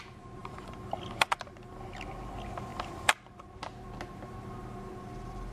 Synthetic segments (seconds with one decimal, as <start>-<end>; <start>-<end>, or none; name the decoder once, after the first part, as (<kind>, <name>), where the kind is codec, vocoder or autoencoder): 0.4-2.1 (vocoder, BigVGAN v2); 2.7-3.5